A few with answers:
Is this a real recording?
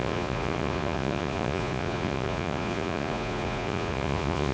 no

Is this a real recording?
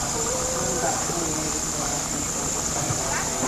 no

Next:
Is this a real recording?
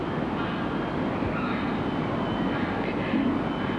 yes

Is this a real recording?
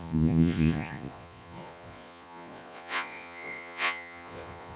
no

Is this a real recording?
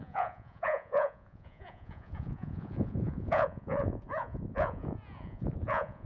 no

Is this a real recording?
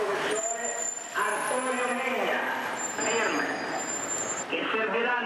yes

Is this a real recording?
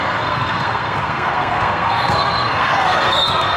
no